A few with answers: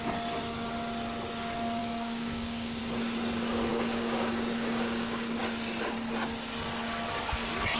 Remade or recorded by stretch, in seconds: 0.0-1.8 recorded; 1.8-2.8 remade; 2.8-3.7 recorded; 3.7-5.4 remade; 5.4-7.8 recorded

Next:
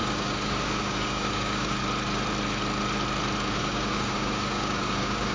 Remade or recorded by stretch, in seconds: 0.0-1.8 remade; 1.8-3.6 recorded; 3.6-5.3 remade